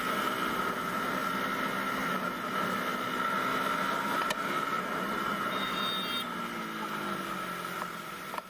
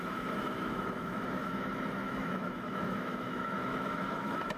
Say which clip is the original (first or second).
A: first